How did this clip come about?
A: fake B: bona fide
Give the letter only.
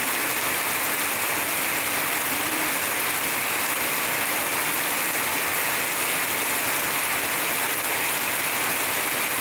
B